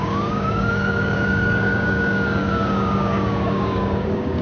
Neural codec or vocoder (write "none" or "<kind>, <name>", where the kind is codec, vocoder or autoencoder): codec, DAC